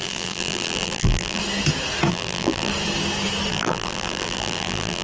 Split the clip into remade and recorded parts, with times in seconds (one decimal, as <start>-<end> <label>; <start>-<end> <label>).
0.0-1.4 remade; 1.4-2.1 recorded; 2.1-2.7 remade; 2.7-3.5 recorded; 3.5-5.0 remade